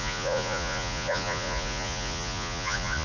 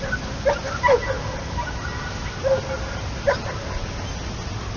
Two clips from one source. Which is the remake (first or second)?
first